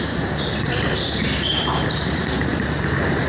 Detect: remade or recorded remade